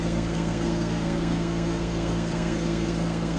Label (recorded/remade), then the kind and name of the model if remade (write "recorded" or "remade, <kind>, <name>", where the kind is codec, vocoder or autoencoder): remade, codec, SNAC